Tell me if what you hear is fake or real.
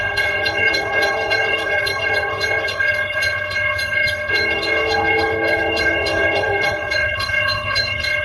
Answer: fake